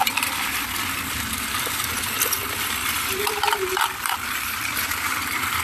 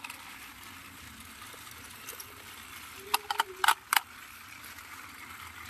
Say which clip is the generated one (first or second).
first